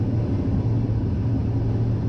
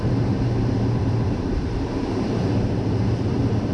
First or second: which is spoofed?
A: second